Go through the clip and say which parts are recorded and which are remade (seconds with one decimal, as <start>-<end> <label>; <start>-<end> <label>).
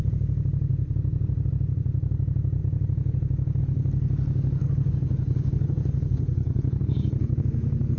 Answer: 0.0-4.6 recorded; 4.6-7.4 remade; 7.4-8.0 recorded